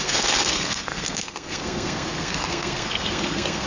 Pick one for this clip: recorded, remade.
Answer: remade